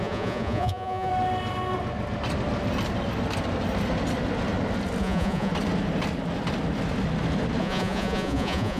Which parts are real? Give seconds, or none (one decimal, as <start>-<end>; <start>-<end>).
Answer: 1.1-5.0; 5.5-7.6